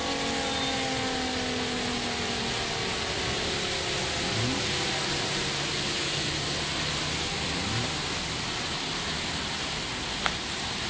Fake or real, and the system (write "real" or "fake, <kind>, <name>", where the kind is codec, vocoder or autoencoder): real